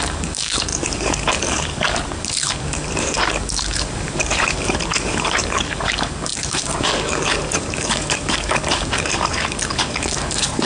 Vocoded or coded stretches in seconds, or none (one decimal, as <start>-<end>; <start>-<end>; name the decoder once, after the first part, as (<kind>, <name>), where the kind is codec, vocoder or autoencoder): 0.0-10.7 (codec, DAC)